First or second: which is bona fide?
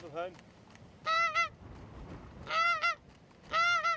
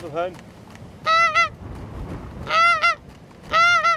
second